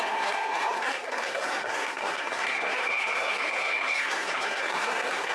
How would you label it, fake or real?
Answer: fake